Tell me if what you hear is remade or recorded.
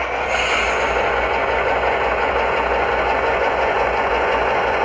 remade